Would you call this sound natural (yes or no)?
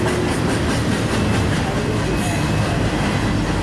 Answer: yes